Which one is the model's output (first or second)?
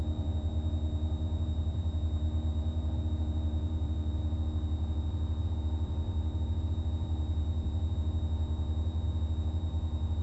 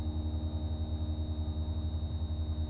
first